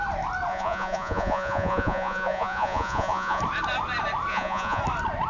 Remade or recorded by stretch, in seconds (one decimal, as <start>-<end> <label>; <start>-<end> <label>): 0.0-0.5 recorded; 0.5-3.4 remade; 3.4-4.3 recorded; 4.3-4.8 remade; 4.8-5.3 recorded